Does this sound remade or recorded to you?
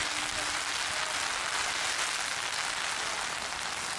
recorded